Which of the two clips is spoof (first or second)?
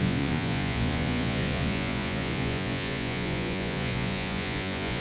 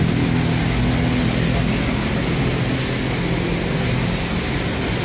first